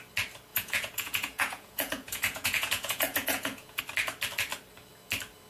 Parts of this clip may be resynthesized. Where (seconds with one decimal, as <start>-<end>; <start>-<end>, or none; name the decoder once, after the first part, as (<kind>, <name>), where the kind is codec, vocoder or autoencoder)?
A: 0.5-3.8 (vocoder, Vocos)